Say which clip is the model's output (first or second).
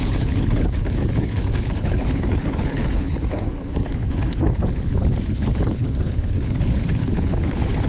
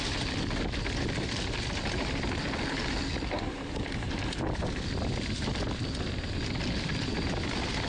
first